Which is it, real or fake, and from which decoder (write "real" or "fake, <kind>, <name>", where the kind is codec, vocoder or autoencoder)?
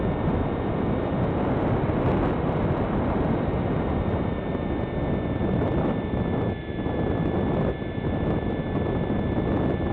real